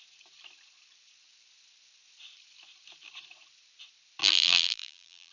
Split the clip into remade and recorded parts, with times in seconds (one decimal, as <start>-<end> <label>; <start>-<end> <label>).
0.0-4.2 recorded; 4.2-5.3 remade